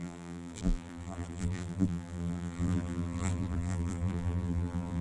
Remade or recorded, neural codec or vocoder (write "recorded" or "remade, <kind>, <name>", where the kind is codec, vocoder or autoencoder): remade, vocoder, BigVGAN v2